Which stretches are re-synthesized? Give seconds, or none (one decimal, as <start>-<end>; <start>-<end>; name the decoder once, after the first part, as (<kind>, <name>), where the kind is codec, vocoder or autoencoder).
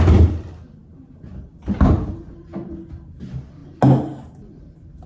none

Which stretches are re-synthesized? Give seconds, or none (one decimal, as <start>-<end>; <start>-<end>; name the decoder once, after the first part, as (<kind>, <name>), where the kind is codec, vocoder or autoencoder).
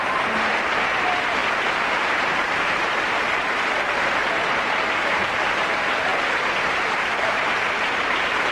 0.0-8.5 (vocoder, BigVGAN v2)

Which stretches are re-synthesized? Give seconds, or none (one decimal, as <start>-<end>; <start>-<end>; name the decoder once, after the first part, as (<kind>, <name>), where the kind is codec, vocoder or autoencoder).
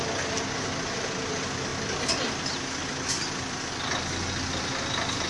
none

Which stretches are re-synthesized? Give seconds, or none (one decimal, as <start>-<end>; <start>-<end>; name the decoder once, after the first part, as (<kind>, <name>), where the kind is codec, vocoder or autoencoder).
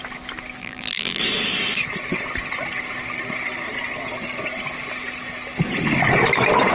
0.6-1.2 (vocoder, BigVGAN v2)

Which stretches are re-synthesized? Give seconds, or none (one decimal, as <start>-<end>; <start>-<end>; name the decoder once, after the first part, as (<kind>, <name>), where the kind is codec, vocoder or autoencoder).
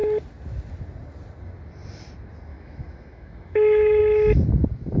2.5-4.0 (autoencoder, DAC-VAE)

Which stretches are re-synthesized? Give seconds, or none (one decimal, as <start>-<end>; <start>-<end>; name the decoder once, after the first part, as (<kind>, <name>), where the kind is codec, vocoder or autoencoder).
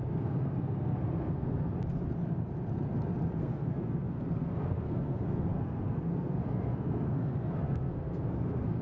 0.0-1.7 (codec, SNAC); 3.4-8.8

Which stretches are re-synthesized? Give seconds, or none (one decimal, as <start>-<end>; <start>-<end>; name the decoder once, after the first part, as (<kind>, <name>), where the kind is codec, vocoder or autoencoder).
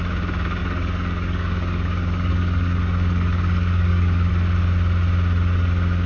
0.6-4.3 (codec, DAC)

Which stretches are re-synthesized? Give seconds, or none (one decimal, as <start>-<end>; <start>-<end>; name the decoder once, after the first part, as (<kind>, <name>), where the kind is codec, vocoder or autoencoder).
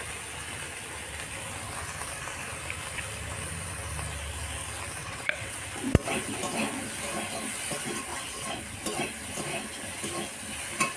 5.0-5.6 (vocoder, WaveNeXt); 8.1-8.6